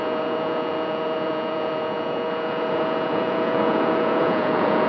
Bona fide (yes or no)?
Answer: no